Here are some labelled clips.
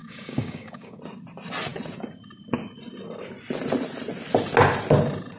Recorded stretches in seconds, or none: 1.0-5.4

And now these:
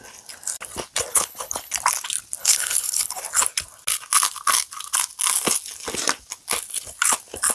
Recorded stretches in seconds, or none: 0.0-1.1; 1.7-2.4; 3.2-7.5

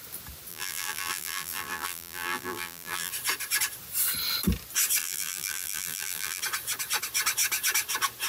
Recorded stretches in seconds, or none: 0.0-0.5; 3.1-5.0; 6.4-8.3

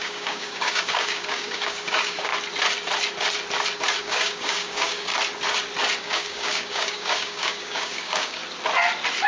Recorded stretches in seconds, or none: 2.3-4.0; 5.1-6.0; 8.4-9.3

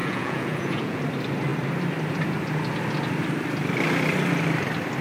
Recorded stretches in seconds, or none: 1.0-5.0

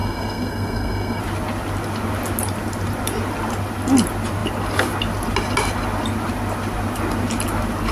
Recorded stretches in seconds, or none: 1.2-7.9

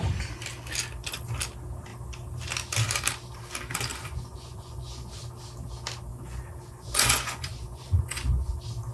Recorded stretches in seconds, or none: 0.0-3.9; 5.2-6.1; 8.5-8.9